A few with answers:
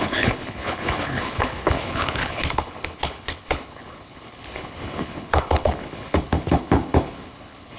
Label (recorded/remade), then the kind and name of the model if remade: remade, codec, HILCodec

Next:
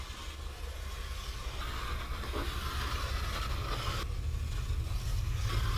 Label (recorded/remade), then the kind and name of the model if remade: recorded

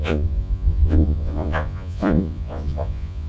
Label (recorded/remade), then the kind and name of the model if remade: remade, vocoder, Vocos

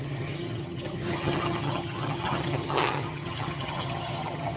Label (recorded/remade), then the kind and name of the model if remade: remade, vocoder, HiFi-GAN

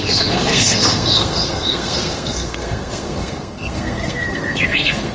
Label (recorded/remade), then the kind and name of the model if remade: remade, codec, SNAC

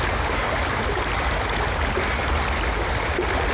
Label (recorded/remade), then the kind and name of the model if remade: recorded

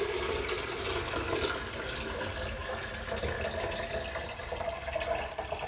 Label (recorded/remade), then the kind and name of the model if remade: recorded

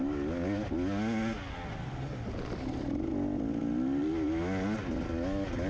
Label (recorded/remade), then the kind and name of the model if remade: recorded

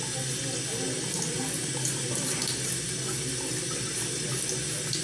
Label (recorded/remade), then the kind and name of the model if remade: recorded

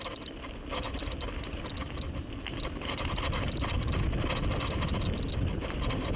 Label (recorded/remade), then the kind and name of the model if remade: recorded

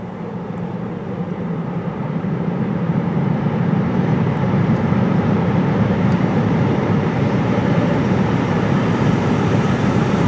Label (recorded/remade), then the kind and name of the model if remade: remade, vocoder, BigVGAN v2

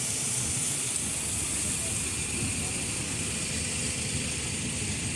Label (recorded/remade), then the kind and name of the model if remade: recorded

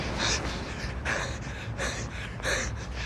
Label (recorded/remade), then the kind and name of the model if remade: recorded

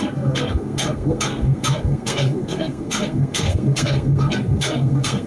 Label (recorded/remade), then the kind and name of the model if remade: remade, codec, SNAC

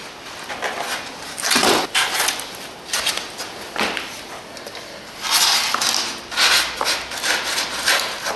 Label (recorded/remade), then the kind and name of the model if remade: recorded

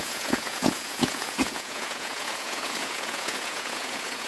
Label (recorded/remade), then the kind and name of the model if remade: remade, vocoder, Vocos